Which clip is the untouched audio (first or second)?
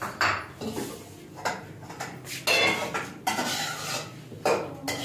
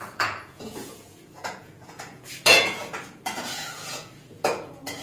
first